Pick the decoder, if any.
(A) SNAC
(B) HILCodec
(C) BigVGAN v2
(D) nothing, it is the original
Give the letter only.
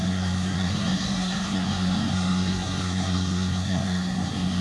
A